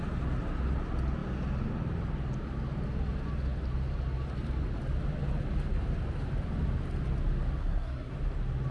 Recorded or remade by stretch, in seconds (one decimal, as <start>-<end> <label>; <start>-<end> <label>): 0.0-7.6 recorded; 7.6-8.1 remade; 8.1-8.7 recorded